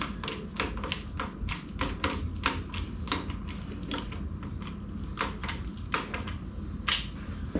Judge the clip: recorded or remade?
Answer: recorded